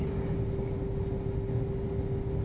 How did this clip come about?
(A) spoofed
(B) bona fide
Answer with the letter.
B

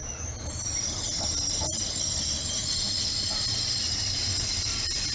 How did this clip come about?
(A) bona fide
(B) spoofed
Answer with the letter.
A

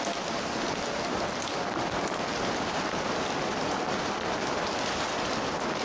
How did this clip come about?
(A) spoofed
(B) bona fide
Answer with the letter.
B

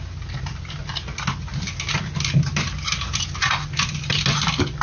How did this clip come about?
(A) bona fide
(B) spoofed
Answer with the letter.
A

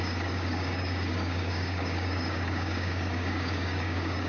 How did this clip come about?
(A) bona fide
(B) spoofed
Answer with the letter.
B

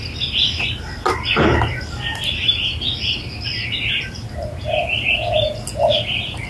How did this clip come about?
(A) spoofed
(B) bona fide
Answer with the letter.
B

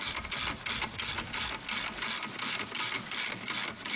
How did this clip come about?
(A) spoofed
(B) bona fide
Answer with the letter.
B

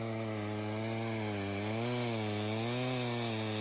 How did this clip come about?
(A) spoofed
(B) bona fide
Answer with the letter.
B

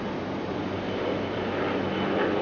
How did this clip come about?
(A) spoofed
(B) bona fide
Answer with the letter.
B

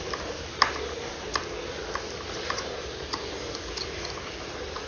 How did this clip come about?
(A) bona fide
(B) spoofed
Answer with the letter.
A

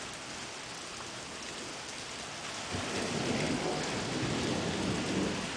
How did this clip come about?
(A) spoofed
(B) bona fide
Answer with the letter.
B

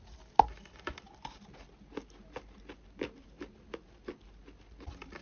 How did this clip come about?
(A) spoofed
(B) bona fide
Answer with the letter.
B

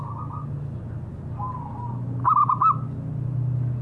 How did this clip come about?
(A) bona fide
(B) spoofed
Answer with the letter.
A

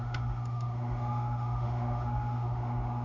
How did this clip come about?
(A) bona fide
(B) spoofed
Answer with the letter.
B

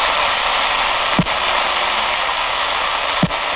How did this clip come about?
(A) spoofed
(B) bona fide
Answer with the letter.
B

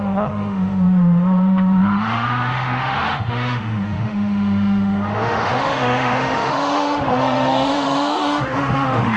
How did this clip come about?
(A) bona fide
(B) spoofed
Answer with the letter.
B